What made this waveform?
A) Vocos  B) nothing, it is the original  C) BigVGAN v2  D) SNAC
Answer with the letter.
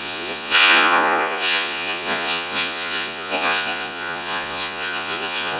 A